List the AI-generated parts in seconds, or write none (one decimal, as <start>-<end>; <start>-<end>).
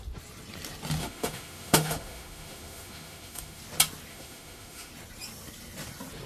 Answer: 1.0-3.6; 4.1-4.9